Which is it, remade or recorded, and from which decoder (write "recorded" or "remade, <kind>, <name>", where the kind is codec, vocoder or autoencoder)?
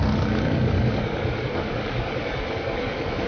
remade, codec, DAC